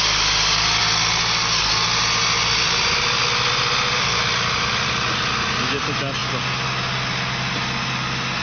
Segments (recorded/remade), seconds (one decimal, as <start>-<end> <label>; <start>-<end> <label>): 0.0-8.4 recorded